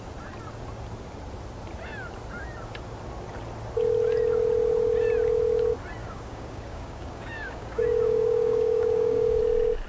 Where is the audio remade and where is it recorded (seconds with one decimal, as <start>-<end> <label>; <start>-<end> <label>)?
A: 0.0-6.0 recorded; 6.0-9.4 remade; 9.4-9.9 recorded